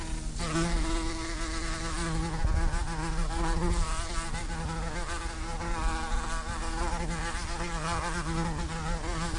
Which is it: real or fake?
real